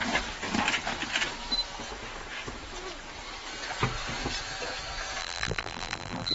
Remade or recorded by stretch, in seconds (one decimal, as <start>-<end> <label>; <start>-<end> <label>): 0.0-5.2 recorded; 5.2-6.3 remade